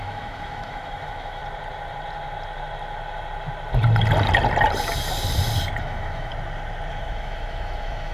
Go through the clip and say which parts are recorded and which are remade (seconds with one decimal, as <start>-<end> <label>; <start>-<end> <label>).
0.0-1.4 remade; 1.4-5.8 recorded; 5.8-6.3 remade; 6.3-6.9 recorded; 6.9-8.1 remade